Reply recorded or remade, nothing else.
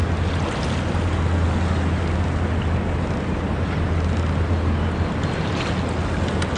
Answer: recorded